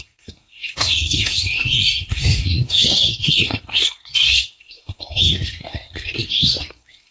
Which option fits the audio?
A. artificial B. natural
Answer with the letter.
A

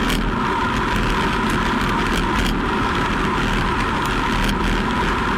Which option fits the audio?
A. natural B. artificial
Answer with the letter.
A